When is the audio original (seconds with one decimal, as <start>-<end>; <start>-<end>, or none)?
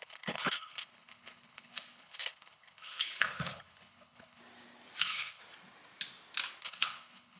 4.4-5.0; 5.4-6.6